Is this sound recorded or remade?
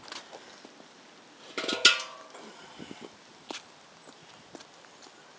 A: recorded